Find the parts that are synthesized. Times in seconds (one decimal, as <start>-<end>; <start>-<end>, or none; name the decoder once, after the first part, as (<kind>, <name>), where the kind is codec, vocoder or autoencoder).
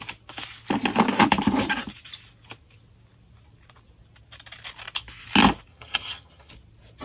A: 5.7-6.5 (vocoder, HiFi-GAN)